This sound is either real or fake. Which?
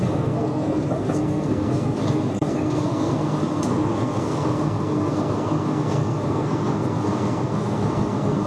fake